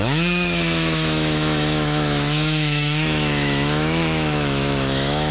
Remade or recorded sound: remade